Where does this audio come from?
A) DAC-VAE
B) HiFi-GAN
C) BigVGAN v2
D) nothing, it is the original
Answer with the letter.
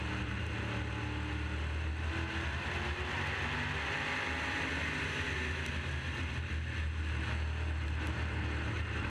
D